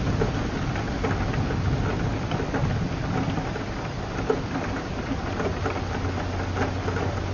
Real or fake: real